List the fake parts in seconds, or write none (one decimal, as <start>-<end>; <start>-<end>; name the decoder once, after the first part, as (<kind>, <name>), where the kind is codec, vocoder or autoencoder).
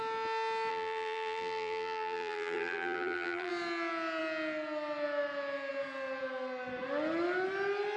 0.7-3.5 (vocoder, BigVGAN v2)